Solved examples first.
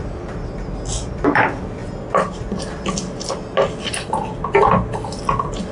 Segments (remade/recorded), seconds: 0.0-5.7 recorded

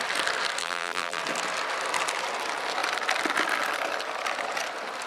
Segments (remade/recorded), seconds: 0.0-0.6 recorded; 0.6-1.2 remade; 1.2-5.1 recorded

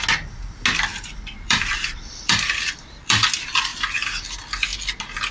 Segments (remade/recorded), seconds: 0.0-0.9 recorded; 0.9-3.3 remade; 3.3-5.3 recorded

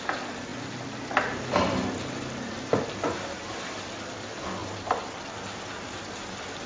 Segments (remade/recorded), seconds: 0.0-6.7 recorded

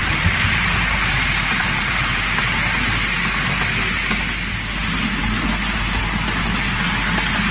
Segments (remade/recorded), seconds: 0.0-2.4 remade; 2.4-7.5 recorded

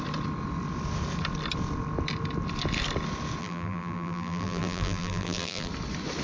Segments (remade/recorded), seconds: 0.0-3.4 recorded; 3.4-5.7 remade; 5.7-6.2 recorded

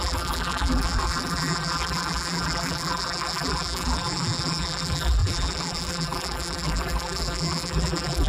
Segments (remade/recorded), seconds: 0.0-8.3 remade